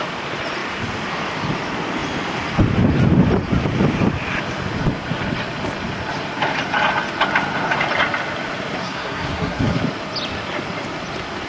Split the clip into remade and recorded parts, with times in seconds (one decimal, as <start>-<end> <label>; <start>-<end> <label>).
0.0-8.8 recorded; 8.8-9.8 remade; 9.8-11.5 recorded